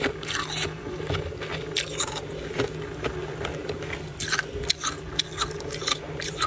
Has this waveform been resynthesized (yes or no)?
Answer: no